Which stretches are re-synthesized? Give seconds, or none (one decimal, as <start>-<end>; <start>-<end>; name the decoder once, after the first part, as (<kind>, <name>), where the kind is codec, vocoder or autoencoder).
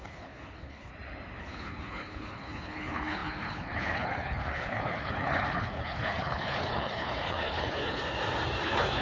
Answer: 0.0-0.9 (codec, HILCodec); 1.4-8.0; 8.6-9.0